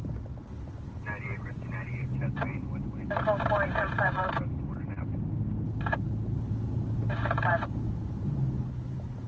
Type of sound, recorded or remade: recorded